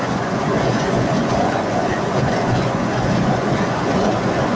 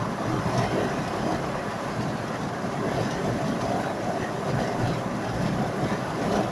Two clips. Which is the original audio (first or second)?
second